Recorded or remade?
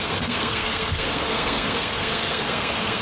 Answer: remade